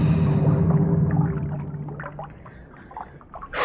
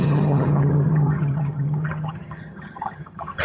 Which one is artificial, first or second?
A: second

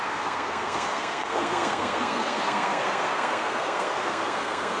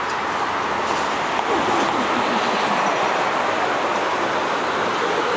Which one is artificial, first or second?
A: first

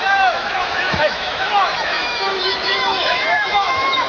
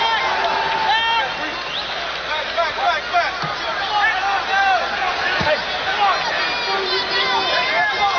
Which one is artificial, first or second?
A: first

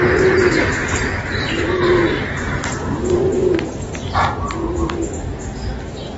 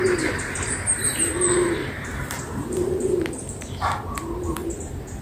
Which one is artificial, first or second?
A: second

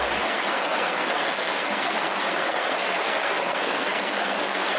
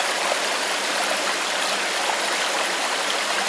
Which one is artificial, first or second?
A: first